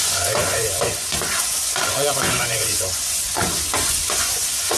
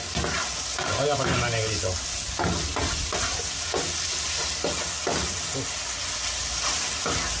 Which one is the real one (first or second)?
second